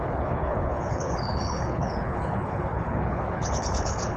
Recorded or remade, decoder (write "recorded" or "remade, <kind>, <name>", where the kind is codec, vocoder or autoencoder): remade, codec, HILCodec